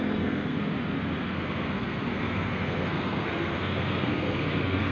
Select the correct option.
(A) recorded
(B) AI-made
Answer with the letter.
B